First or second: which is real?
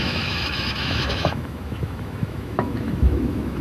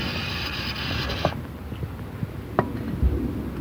second